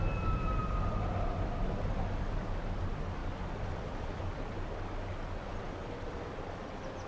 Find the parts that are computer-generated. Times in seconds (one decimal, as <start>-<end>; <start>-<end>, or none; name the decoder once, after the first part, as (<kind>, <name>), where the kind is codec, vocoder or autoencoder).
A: none